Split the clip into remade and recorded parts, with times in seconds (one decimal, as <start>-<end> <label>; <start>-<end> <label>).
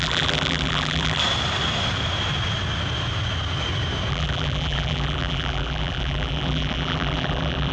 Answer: 0.0-1.2 remade; 1.2-4.1 recorded; 4.1-7.7 remade